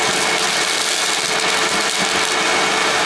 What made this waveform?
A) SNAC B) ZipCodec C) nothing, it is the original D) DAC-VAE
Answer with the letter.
C